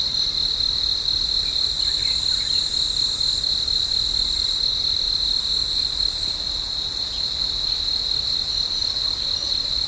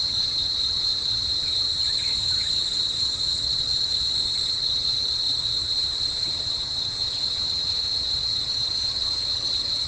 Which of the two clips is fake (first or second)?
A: second